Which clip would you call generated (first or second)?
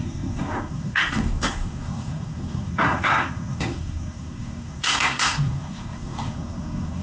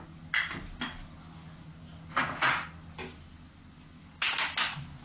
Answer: first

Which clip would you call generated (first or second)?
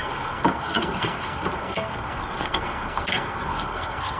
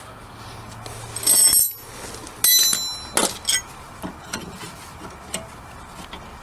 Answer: first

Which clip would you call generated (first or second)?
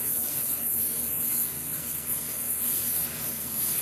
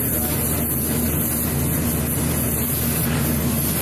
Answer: first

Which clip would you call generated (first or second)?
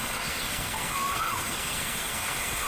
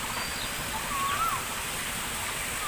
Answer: first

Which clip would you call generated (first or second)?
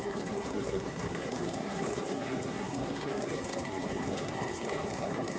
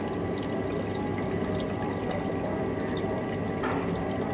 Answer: first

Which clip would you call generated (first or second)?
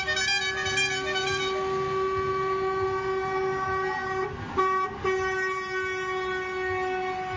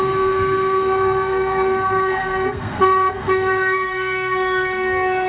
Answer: second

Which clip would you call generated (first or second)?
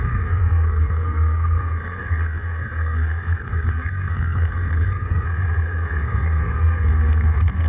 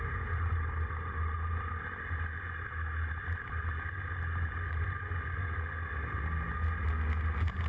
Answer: first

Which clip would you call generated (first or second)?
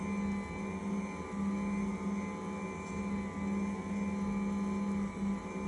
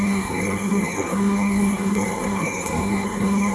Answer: second